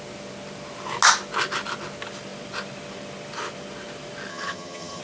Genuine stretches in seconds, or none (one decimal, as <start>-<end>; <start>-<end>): 0.0-4.3